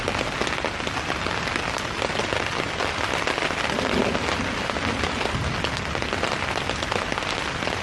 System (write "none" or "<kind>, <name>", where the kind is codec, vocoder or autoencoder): none